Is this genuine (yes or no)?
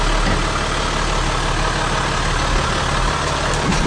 yes